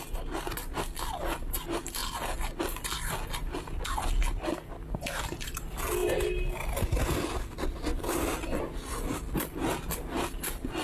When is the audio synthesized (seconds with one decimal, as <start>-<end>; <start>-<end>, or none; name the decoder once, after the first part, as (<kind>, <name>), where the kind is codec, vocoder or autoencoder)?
none